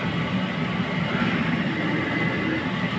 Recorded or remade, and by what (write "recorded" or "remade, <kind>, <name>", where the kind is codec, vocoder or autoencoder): recorded